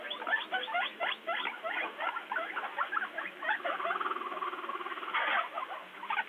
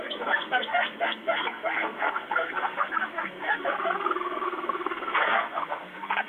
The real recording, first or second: first